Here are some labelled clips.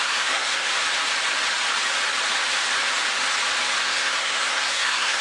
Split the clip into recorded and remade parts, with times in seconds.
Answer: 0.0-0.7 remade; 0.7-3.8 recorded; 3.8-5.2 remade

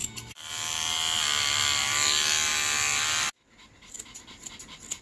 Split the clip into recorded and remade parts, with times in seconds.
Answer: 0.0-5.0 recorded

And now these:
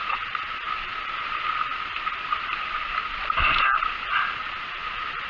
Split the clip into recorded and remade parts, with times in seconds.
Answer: 0.0-5.3 recorded

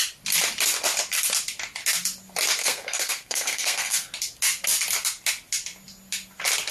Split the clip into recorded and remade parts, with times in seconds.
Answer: 0.0-2.6 recorded; 2.6-4.1 remade; 4.1-6.7 recorded

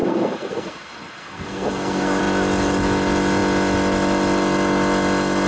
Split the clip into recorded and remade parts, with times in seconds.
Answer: 0.0-2.2 remade; 2.2-5.5 recorded